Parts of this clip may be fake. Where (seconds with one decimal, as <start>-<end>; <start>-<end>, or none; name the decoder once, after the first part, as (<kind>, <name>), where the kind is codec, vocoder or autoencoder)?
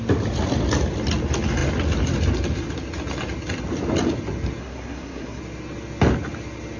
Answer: 4.6-5.4 (codec, SNAC)